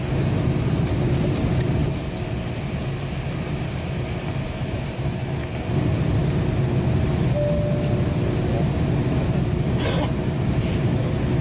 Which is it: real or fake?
real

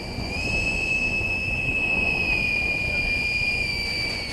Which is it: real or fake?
fake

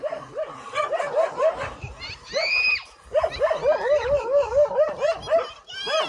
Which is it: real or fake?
fake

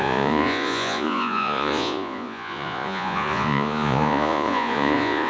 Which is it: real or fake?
fake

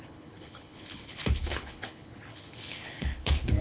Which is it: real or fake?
fake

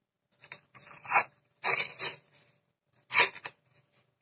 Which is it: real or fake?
real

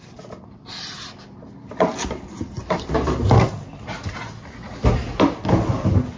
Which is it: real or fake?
real